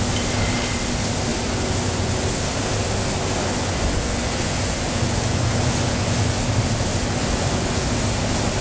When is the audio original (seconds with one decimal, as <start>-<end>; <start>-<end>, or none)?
0.0-1.3; 2.3-3.4; 6.4-6.9; 7.9-8.6